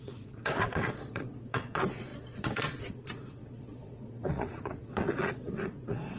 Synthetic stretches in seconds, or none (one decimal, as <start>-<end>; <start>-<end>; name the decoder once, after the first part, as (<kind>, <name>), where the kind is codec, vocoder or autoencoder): 0.0-6.2 (vocoder, Vocos)